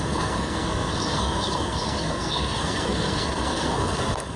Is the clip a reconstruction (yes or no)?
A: yes